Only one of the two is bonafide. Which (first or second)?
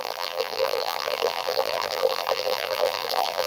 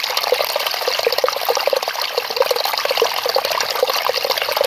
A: second